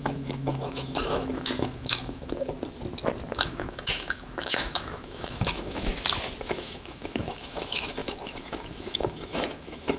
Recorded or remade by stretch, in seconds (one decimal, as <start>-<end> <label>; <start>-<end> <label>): 0.0-2.5 remade; 2.5-3.3 recorded; 3.3-5.9 remade; 5.9-6.4 recorded; 6.4-10.0 remade